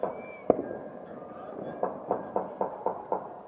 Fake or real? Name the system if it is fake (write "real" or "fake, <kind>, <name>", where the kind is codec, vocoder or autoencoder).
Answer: real